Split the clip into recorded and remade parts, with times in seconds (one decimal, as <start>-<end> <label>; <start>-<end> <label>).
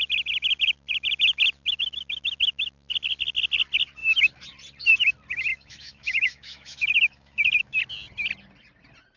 0.0-5.5 recorded; 5.5-7.8 remade; 7.8-9.2 recorded